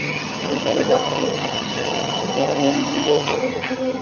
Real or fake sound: fake